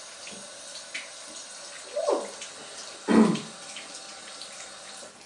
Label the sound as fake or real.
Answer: real